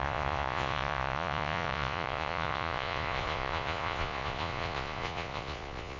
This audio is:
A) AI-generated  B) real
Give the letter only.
A